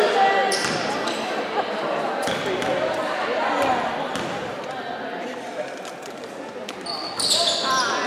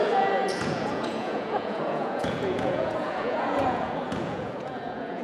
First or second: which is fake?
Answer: second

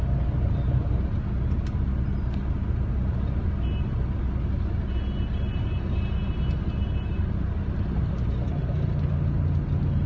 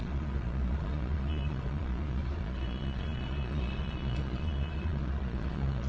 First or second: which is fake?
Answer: second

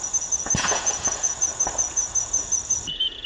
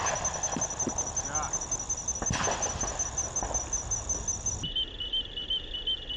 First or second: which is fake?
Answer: first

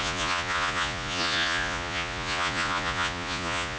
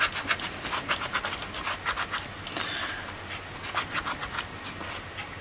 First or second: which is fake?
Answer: first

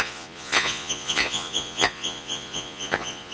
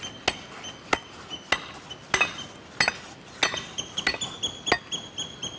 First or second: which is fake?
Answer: first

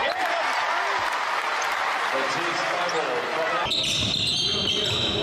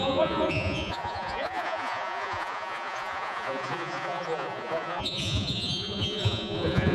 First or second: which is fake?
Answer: second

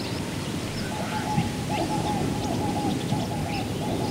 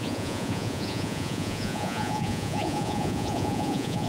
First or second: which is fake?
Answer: second